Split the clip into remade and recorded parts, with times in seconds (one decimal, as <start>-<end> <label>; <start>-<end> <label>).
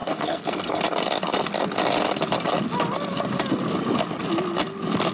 0.0-0.8 remade; 0.8-5.1 recorded